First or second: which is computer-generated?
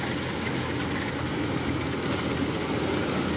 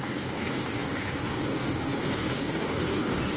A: second